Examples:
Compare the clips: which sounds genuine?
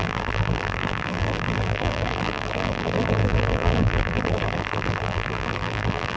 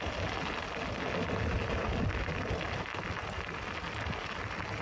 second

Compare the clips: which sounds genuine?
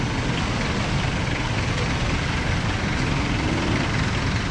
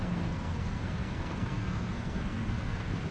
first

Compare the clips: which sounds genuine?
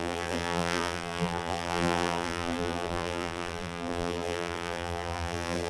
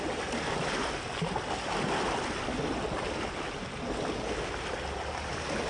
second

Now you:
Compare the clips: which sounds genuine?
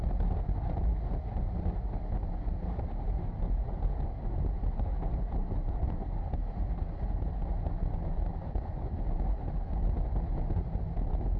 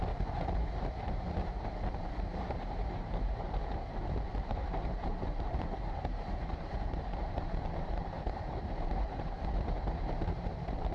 first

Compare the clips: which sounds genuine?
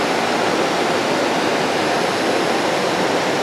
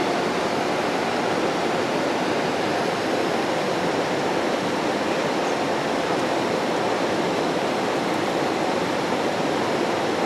first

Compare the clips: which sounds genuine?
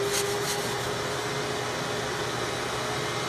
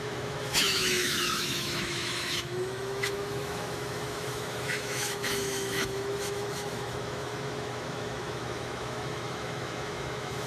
first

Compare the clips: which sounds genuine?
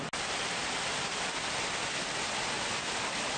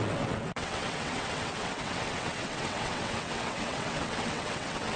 first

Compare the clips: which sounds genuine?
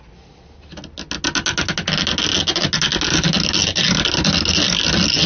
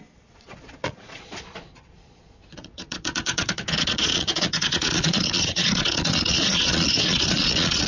first